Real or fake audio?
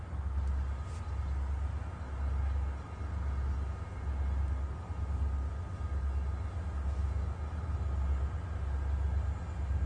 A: real